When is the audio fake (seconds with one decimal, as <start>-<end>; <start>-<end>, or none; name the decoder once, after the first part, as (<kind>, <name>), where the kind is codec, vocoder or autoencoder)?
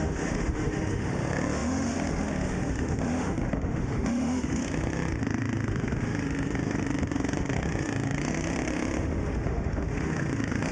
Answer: 0.0-10.7 (autoencoder, DAC-VAE)